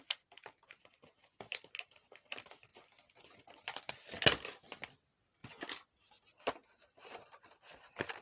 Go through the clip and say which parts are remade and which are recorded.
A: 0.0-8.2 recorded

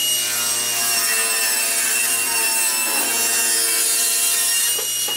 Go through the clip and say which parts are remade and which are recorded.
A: 0.0-5.2 recorded

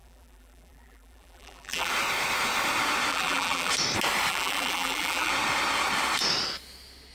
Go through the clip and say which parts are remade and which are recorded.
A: 0.0-1.9 remade; 1.9-3.1 recorded; 3.1-3.7 remade; 3.7-4.3 recorded; 4.3-5.3 remade; 5.3-7.1 recorded

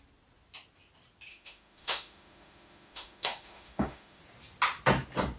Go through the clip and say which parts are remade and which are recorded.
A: 0.0-1.3 recorded; 1.3-4.2 remade; 4.2-5.4 recorded

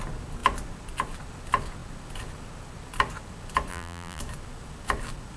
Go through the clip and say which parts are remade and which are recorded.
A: 0.0-3.7 recorded; 3.7-4.2 remade; 4.2-5.4 recorded

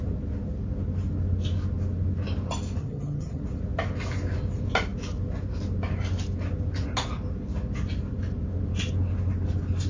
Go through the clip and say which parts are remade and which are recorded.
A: 0.0-2.8 recorded; 2.8-3.4 remade; 3.4-9.9 recorded

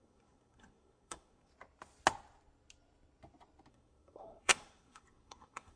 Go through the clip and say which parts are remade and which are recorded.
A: 0.0-1.5 remade; 1.5-3.7 recorded; 3.7-5.8 remade